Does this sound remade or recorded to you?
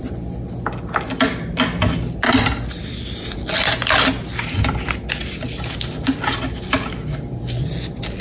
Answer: recorded